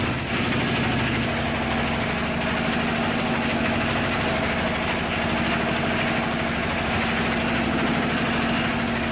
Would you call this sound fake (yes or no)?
no